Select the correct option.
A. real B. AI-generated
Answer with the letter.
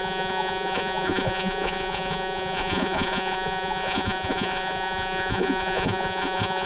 B